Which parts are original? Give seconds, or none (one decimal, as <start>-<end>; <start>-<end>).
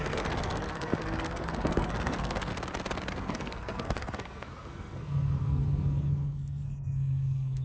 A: 2.5-3.1